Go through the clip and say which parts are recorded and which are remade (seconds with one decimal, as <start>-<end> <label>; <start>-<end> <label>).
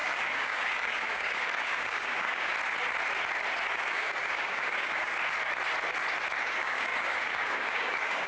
0.0-2.5 remade; 2.5-3.8 recorded; 3.8-5.1 remade; 5.1-6.4 recorded; 6.4-8.3 remade